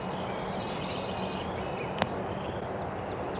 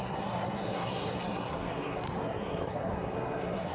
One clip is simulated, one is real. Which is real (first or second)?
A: first